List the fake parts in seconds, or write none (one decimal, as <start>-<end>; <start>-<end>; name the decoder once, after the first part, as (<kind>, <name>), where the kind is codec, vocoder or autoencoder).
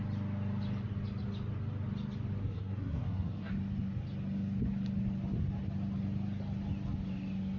2.4-3.5 (codec, SNAC)